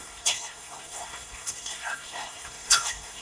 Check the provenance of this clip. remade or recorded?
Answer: remade